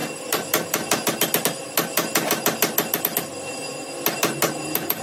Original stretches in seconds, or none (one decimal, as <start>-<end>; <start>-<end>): 0.0-5.0